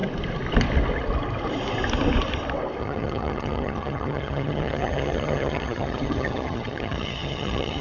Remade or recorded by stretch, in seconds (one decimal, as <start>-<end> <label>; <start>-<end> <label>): 0.0-2.8 recorded; 2.8-7.8 remade